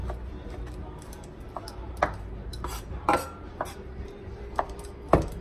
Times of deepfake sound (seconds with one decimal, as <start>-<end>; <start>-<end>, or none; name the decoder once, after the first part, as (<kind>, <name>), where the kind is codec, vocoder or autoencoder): 2.5-4.4 (vocoder, BigVGAN v2)